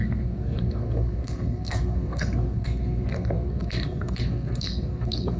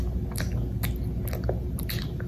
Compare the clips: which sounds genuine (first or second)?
second